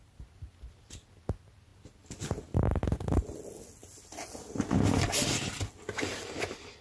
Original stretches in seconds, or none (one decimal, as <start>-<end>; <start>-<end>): 0.0-6.8